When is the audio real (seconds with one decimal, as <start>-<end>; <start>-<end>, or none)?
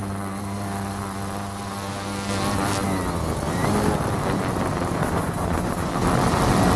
0.0-5.0; 5.9-6.8